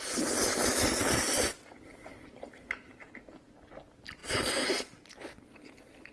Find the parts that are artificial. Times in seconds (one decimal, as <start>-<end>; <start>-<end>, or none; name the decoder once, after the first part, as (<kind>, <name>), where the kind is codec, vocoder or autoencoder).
none